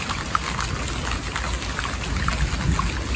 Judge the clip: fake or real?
real